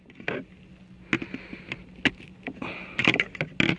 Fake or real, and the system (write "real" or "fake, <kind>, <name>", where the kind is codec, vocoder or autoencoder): real